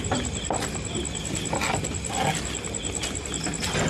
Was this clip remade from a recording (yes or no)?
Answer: no